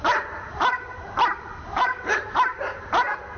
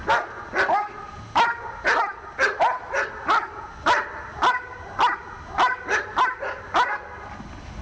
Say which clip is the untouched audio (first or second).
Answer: second